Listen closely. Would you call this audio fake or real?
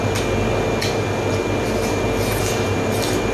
real